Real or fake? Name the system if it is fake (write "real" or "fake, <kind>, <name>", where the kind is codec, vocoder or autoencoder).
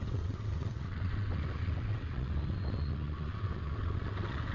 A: fake, vocoder, WaveNeXt